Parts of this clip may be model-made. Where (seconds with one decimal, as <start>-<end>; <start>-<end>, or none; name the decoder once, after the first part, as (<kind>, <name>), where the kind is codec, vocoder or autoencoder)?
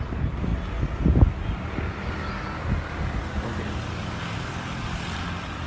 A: none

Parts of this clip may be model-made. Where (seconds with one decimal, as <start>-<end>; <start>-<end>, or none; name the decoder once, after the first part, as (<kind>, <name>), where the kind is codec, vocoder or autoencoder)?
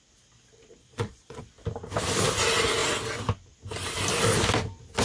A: 0.8-1.4 (vocoder, Vocos)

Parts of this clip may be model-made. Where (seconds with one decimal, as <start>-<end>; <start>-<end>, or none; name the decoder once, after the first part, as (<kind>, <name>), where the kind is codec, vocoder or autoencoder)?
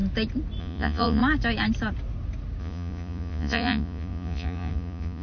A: 0.6-1.2 (vocoder, Vocos); 2.6-5.2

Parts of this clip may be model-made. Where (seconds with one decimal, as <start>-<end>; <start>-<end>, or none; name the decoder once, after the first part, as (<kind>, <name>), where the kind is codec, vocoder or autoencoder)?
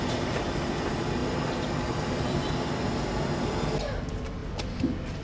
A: none